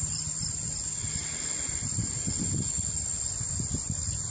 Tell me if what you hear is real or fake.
real